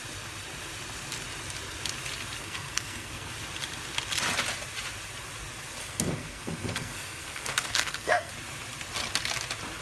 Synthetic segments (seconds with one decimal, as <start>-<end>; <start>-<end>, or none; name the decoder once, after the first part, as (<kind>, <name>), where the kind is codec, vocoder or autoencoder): 2.4-3.3 (codec, SNAC); 5.8-8.3